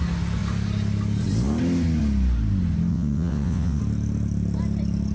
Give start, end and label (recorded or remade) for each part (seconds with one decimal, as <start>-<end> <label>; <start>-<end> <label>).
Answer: 0.0-2.9 recorded; 2.9-3.8 remade; 3.8-5.1 recorded